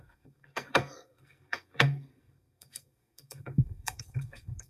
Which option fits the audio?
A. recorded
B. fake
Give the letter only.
B